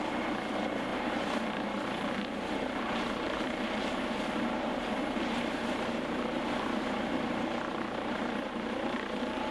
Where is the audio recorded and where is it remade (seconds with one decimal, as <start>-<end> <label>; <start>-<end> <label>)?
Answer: 0.0-9.5 remade